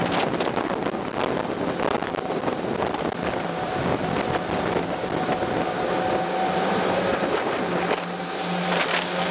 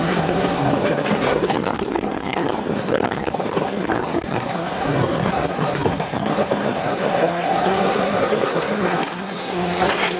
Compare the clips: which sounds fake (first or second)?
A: second